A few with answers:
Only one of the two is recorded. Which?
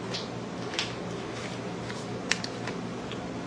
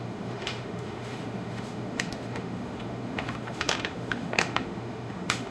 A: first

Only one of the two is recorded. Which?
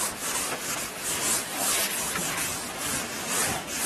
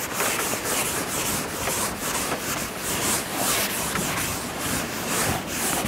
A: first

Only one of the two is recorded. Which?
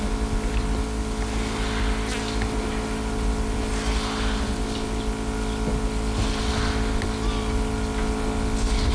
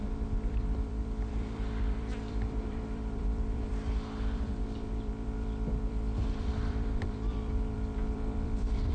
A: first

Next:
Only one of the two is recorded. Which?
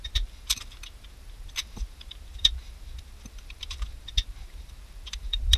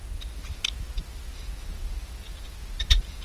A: second